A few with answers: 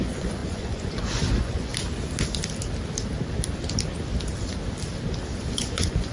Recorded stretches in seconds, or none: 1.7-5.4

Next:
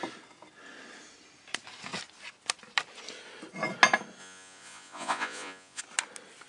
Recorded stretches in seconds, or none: 0.0-4.2; 5.8-6.5

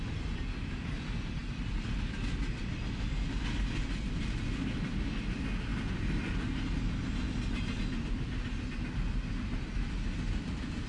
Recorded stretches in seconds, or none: 0.0-10.9